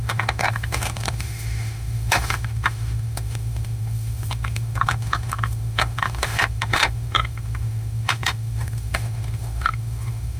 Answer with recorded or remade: remade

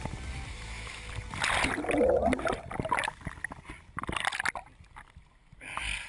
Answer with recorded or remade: recorded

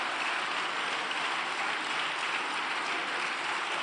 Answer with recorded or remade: recorded